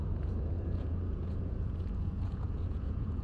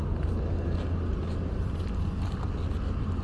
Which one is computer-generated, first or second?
first